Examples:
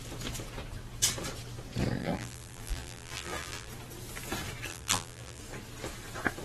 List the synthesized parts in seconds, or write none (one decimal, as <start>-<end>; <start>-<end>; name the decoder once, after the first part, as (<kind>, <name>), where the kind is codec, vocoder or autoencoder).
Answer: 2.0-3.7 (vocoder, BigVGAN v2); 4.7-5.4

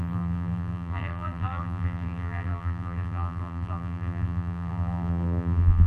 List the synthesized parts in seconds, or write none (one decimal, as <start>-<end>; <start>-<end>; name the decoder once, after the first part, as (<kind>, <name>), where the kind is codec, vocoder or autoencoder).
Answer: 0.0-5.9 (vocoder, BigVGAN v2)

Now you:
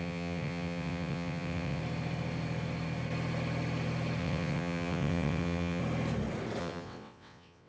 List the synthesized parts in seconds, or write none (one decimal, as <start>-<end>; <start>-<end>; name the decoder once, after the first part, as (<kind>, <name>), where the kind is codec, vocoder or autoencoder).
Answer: 0.0-1.8 (vocoder, WaveNeXt); 4.2-5.8; 6.6-7.7

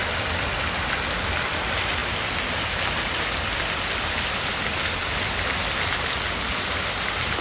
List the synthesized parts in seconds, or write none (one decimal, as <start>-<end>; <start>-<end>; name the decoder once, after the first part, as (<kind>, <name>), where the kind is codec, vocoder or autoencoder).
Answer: none